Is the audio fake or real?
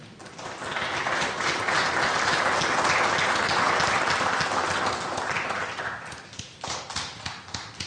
real